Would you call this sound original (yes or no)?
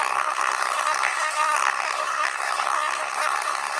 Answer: no